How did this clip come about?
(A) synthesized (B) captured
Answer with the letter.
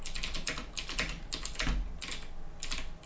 B